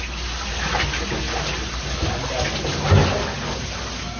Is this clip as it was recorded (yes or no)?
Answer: yes